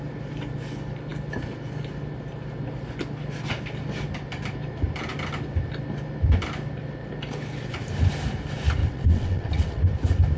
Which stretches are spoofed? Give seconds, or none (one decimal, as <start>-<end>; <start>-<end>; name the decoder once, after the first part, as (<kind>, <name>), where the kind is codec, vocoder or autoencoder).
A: 8.8-9.8 (vocoder, WaveNeXt)